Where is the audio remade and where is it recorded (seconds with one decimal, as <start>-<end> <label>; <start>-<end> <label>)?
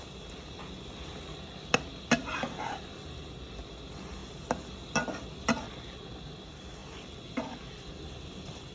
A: 0.0-8.7 recorded